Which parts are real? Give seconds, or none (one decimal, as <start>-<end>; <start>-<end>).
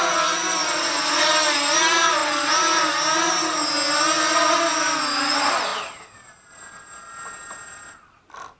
0.0-0.6; 1.3-2.2; 2.9-8.6